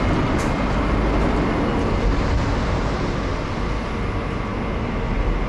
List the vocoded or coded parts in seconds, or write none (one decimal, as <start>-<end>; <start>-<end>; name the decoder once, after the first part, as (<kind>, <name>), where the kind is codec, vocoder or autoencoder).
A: none